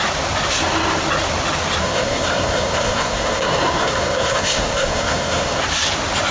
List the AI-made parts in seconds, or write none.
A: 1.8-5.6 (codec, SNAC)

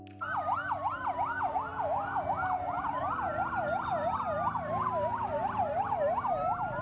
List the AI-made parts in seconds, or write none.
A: none

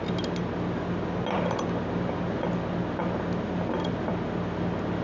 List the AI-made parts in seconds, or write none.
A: none

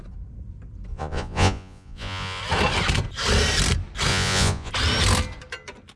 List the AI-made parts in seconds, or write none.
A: 0.9-2.4 (vocoder, Vocos); 4.1-4.7

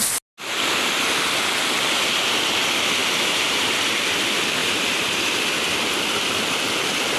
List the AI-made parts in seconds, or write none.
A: 3.0-3.8 (vocoder, BigVGAN v2); 4.6-6.0

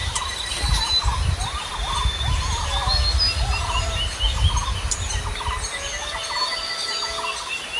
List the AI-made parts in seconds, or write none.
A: none

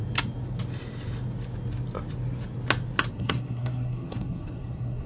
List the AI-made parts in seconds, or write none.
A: 3.1-5.1 (codec, SNAC)

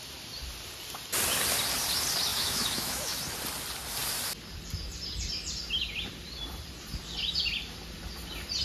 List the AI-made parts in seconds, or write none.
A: 2.3-3.2 (autoencoder, DAC-VAE)